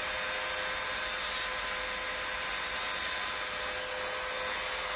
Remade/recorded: recorded